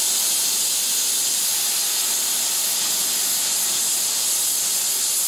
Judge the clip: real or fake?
real